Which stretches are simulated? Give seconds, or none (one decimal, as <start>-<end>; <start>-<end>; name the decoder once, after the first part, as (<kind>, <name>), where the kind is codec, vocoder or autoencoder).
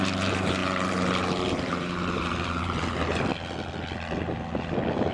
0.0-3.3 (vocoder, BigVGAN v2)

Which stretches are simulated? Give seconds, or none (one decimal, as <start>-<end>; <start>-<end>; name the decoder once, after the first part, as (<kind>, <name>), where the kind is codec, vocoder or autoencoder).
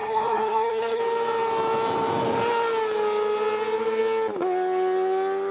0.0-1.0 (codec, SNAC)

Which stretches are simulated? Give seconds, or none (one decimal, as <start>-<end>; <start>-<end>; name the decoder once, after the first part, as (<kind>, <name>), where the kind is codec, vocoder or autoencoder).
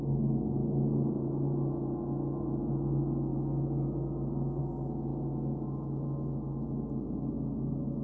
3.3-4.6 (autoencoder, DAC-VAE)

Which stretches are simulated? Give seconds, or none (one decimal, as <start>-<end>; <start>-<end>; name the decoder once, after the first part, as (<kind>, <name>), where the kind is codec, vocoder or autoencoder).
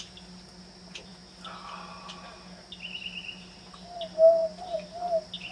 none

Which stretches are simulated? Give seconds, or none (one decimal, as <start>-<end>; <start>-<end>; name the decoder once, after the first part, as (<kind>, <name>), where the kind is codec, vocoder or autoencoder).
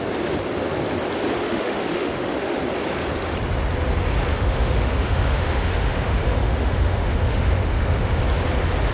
1.4-2.6 (autoencoder, DAC-VAE); 4.3-8.2